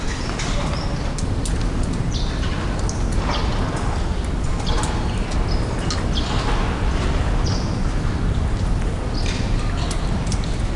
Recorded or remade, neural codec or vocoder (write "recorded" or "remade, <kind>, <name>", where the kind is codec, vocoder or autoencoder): recorded